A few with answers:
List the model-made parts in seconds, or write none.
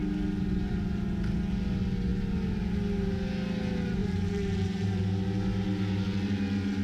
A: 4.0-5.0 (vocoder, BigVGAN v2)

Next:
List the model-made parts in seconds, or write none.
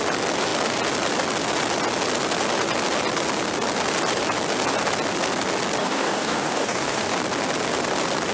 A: 5.8-7.1 (codec, DAC)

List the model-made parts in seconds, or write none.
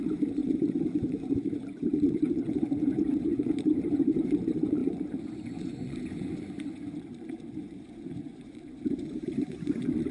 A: 0.0-10.1 (vocoder, Vocos)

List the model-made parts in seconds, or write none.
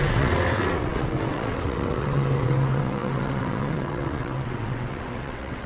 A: 0.0-5.7 (vocoder, WaveNeXt)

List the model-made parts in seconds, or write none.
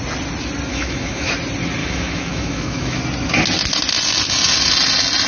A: 0.7-1.3 (autoencoder, DAC-VAE); 1.8-3.0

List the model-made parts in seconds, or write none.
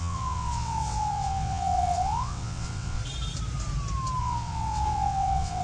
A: 0.0-3.0 (vocoder, WaveNeXt); 4.2-5.6